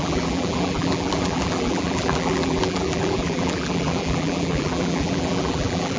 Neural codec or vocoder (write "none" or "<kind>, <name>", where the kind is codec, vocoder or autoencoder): vocoder, BigVGAN v2